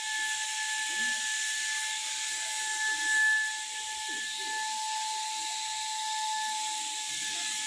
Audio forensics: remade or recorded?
recorded